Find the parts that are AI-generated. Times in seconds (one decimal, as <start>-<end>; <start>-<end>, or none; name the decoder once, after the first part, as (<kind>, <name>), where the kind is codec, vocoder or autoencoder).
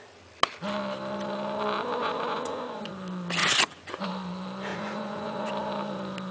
2.0-2.9 (vocoder, Vocos); 3.4-4.1; 4.7-5.5